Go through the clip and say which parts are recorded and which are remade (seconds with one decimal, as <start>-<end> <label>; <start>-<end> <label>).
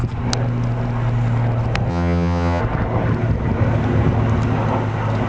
0.0-1.9 recorded; 1.9-2.6 remade; 2.6-5.3 recorded